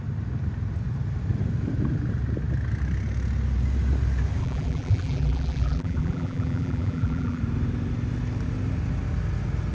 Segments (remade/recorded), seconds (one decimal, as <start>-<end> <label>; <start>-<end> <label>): 0.0-4.4 recorded; 4.4-7.4 remade; 7.4-9.7 recorded